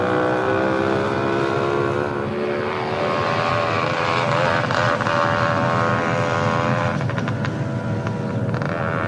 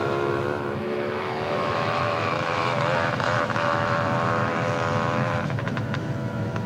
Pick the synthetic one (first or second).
second